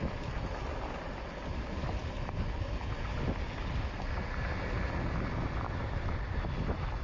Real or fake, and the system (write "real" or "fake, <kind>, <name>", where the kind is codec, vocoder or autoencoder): real